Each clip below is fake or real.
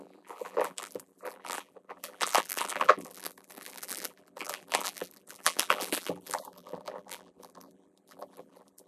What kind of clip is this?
fake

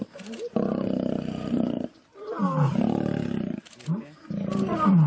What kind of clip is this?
fake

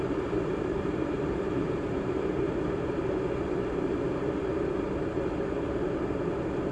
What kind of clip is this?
fake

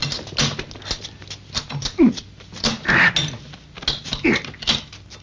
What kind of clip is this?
real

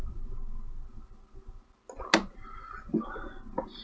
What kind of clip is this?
real